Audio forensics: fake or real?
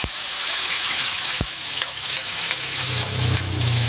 fake